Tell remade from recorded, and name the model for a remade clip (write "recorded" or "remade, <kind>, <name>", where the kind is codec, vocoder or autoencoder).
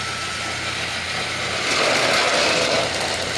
recorded